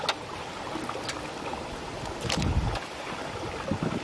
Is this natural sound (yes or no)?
yes